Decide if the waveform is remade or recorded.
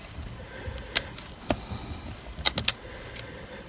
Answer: recorded